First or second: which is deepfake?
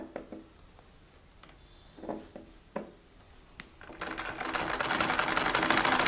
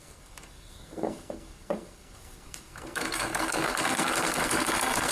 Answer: second